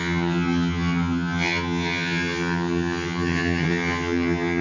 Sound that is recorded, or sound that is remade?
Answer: remade